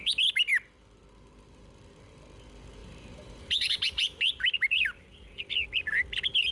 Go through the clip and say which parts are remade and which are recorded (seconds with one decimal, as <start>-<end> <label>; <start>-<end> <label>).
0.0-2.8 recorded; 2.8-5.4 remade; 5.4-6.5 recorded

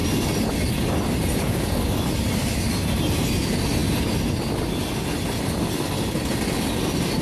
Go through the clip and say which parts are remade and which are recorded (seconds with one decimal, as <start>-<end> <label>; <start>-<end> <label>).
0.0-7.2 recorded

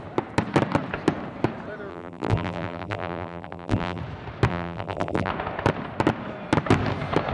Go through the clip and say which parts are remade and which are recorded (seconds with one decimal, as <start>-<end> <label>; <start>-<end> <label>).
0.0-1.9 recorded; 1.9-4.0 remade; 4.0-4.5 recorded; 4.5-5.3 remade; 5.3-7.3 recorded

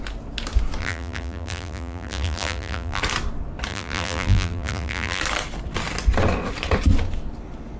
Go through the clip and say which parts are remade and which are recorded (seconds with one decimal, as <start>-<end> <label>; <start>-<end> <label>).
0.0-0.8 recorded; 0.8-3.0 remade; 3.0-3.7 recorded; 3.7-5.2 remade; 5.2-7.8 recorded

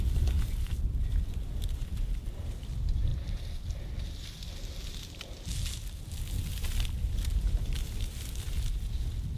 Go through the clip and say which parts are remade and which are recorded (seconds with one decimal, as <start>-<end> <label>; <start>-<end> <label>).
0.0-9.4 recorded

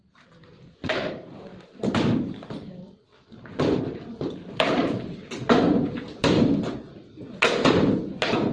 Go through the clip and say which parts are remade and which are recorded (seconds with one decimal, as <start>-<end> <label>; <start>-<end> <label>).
0.0-1.5 remade; 1.5-3.8 recorded; 3.8-8.5 remade

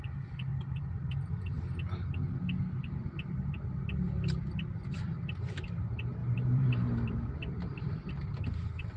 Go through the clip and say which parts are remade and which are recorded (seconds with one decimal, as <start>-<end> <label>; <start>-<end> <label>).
0.0-0.5 recorded; 0.5-1.6 remade; 1.6-6.2 recorded; 6.2-8.1 remade; 8.1-9.0 recorded